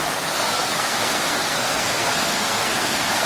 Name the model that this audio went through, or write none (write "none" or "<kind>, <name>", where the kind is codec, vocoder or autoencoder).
codec, SNAC